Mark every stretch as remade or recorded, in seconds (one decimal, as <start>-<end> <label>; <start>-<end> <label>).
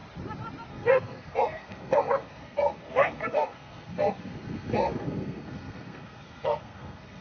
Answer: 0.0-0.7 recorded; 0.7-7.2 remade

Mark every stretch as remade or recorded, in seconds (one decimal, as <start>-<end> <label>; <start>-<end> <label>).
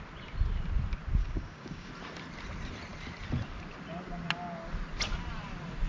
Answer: 0.0-1.2 recorded; 1.2-1.9 remade; 1.9-5.9 recorded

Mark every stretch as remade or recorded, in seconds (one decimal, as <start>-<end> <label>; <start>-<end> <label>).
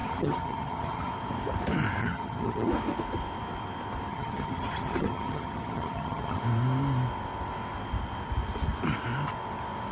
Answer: 0.0-1.1 remade; 1.1-2.0 recorded; 2.0-2.7 remade; 2.7-4.1 recorded; 4.1-6.4 remade; 6.4-9.9 recorded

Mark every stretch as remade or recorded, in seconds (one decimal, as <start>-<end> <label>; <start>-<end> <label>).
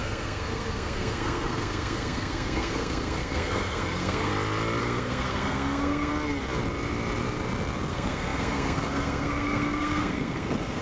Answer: 0.0-4.3 remade; 4.3-4.8 recorded; 4.8-6.1 remade; 6.1-7.9 recorded; 7.9-10.8 remade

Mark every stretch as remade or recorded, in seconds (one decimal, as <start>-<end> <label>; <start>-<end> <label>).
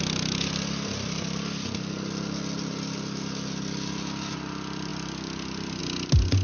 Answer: 0.0-6.4 recorded